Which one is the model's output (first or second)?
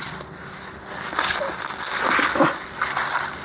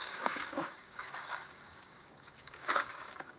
second